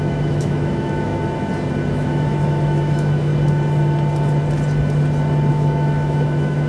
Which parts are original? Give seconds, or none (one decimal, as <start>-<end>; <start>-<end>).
1.1-1.9; 3.3-5.5

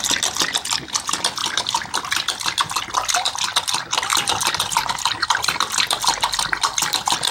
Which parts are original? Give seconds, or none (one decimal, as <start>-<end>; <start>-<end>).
0.0-7.3

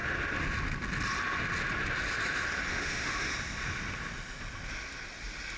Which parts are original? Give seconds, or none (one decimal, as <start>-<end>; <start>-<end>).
0.0-2.7; 3.3-5.6

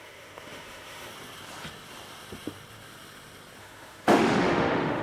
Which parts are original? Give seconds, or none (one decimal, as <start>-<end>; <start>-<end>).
1.1-3.6